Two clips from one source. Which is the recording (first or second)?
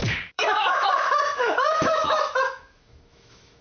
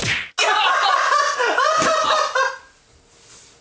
second